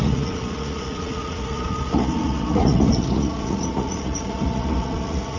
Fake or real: fake